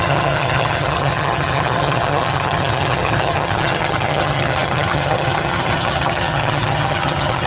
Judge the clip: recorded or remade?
remade